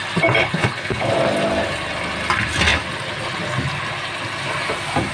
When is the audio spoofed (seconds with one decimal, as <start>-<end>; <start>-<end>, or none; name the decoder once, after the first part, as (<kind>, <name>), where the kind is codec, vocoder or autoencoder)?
0.4-1.1 (codec, HILCodec)